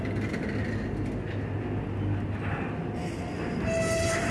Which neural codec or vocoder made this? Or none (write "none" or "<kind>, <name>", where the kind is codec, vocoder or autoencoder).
none